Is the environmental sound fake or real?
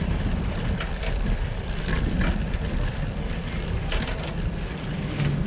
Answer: real